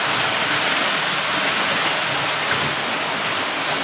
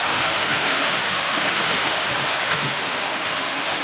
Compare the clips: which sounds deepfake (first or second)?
second